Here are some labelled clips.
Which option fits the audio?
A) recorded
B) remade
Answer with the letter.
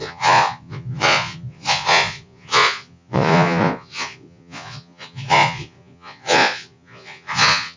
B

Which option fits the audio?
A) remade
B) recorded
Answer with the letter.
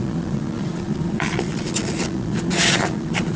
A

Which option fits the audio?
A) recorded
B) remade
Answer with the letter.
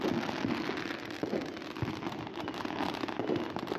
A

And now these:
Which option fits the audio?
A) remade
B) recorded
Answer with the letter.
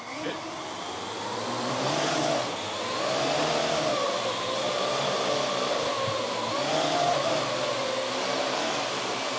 B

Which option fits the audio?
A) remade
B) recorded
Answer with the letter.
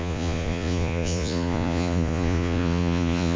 A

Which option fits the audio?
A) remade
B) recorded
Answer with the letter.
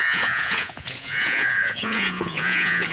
A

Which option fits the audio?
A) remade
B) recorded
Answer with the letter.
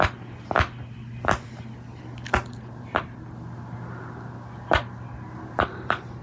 B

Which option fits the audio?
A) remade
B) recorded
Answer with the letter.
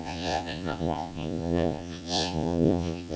A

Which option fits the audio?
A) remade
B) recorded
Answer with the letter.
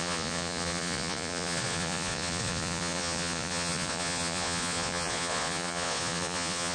A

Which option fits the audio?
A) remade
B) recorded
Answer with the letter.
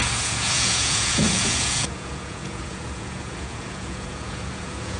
A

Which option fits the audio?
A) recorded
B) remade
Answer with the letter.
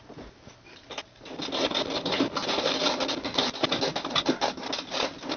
A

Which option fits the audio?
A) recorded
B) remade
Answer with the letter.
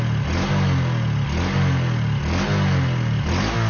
A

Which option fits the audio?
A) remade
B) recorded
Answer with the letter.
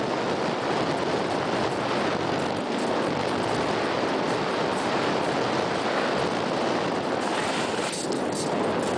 B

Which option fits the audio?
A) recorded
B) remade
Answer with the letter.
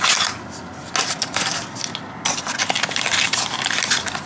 A